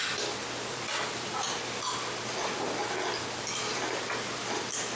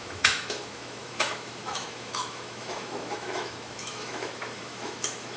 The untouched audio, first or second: first